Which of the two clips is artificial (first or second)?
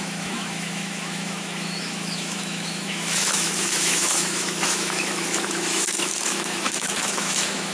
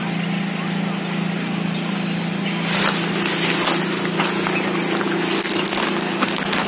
first